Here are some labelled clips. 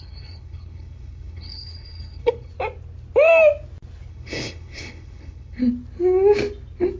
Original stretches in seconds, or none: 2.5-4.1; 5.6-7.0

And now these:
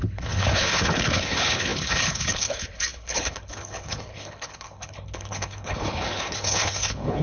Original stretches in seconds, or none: none